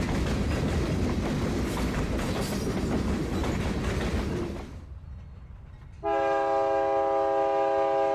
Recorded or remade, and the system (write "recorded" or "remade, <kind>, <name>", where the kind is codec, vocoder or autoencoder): recorded